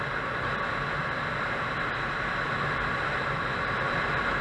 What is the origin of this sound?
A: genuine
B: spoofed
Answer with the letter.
A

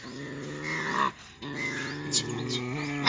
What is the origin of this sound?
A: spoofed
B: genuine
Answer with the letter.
B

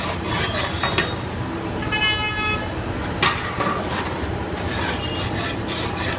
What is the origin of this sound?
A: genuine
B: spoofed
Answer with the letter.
A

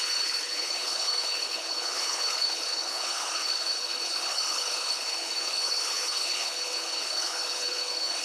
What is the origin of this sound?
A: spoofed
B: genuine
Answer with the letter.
A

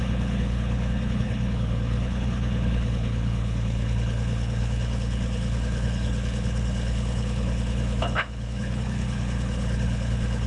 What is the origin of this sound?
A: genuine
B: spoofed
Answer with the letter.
B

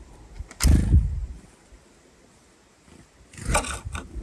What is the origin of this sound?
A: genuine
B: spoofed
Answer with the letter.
A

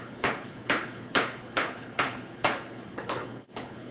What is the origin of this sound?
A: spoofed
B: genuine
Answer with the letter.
A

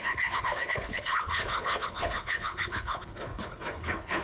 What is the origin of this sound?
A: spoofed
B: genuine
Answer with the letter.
A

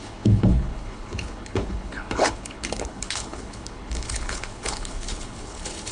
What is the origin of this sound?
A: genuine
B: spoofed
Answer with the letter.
B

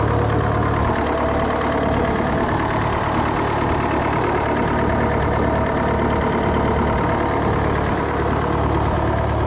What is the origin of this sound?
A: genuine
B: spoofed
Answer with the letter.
A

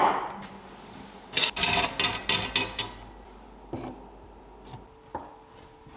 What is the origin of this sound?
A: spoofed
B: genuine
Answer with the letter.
B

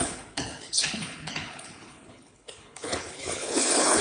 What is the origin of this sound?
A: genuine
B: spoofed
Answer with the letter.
B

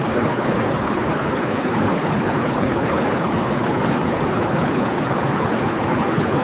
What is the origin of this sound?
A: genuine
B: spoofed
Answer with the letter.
B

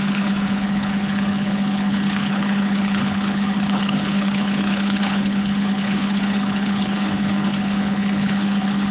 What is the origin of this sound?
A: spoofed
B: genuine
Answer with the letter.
A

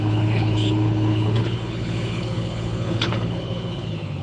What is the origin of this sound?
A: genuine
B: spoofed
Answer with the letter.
B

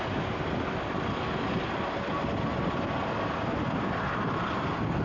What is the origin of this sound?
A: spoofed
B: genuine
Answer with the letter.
B